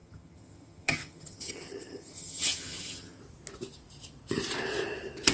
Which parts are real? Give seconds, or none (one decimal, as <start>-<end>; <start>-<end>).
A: 3.2-5.3